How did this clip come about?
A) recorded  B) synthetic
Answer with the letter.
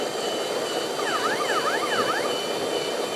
A